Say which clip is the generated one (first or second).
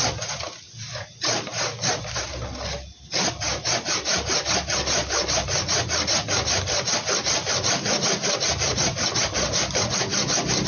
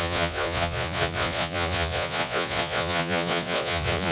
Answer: second